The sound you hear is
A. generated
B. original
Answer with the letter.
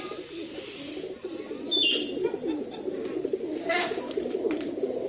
B